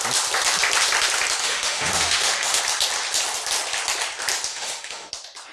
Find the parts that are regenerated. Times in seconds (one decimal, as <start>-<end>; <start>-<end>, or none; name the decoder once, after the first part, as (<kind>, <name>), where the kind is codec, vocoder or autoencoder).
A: 1.4-2.6 (autoencoder, DAC-VAE); 4.5-5.1